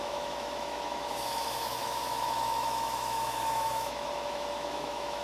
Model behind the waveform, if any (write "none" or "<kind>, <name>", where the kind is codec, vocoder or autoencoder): autoencoder, DAC-VAE